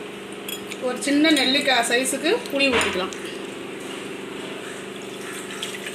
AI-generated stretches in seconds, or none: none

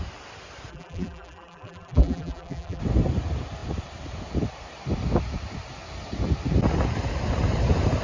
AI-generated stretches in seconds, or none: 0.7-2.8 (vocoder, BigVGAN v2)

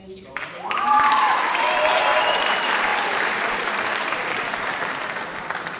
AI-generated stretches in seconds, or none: 0.5-2.9 (vocoder, BigVGAN v2); 3.5-5.8

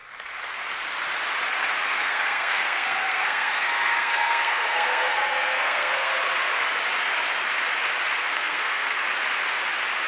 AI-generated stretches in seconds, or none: 1.7-6.1 (codec, SNAC); 8.2-9.0